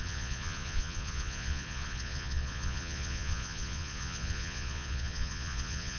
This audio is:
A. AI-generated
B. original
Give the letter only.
A